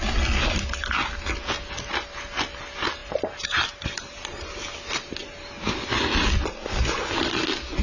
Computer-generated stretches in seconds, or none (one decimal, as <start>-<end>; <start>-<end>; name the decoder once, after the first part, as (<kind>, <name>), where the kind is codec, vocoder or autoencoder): 3.0-4.6 (vocoder, BigVGAN v2)